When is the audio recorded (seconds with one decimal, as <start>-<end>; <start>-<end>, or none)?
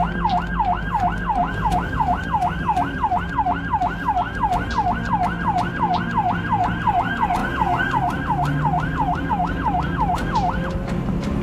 0.0-1.4; 2.2-11.4